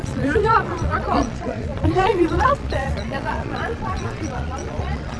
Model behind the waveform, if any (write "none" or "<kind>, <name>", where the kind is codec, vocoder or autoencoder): vocoder, Vocos